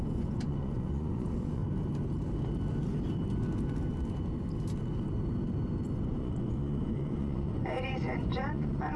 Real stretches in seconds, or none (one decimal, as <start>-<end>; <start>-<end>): 1.6-5.9